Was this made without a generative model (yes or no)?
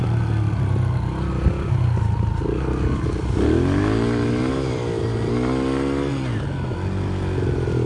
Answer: yes